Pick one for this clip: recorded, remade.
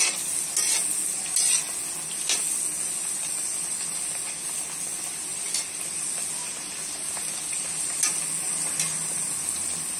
recorded